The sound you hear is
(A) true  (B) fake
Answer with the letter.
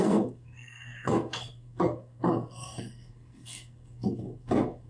B